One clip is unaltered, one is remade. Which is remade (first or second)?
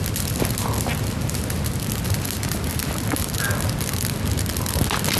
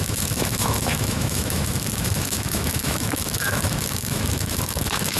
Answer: second